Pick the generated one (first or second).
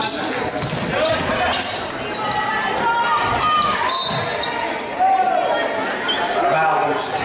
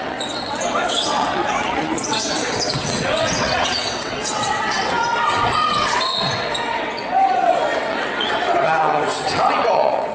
second